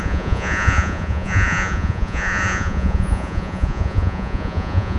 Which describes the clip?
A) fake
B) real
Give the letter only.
A